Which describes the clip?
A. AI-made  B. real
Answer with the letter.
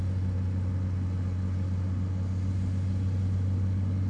B